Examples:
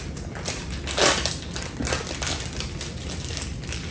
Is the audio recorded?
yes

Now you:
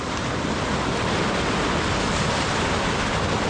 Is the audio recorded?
yes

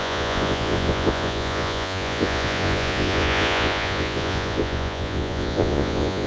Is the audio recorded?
no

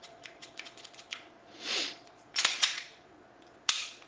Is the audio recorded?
no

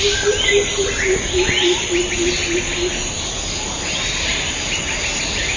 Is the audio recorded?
yes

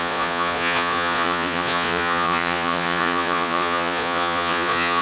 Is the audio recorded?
no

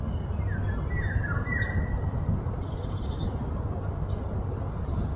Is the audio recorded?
yes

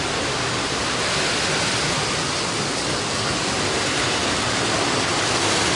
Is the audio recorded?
yes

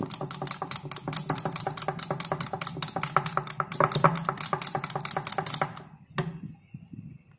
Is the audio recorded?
yes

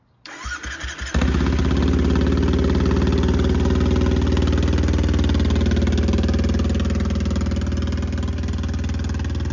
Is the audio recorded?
yes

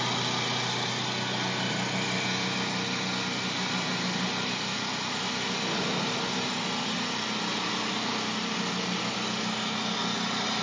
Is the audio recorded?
yes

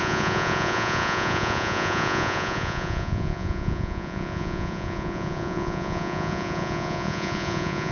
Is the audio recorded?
no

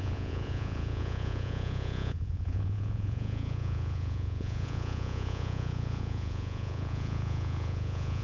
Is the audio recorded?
no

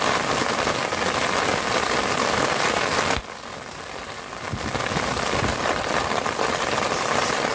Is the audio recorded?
yes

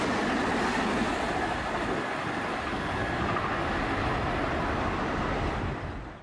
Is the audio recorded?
yes